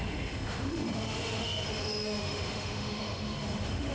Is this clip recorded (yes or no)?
no